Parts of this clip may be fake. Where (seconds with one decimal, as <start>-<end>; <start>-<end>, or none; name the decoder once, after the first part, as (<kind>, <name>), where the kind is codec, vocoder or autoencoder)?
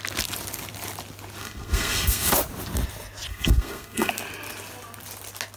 1.4-2.3 (codec, SNAC); 3.3-4.1